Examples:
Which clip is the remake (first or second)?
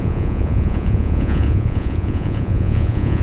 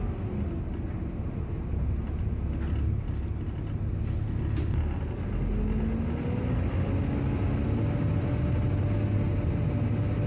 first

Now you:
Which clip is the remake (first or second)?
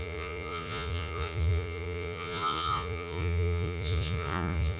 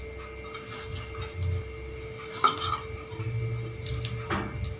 first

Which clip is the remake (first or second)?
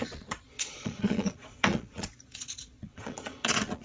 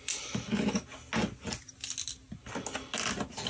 first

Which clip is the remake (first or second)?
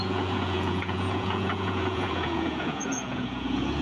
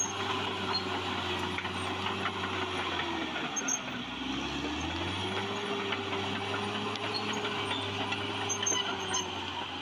first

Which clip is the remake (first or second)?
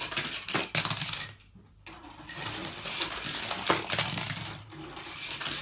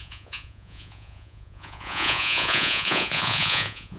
second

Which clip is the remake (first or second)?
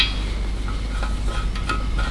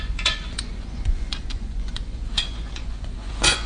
second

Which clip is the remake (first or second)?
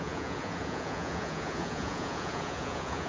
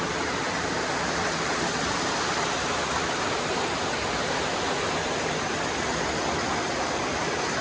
first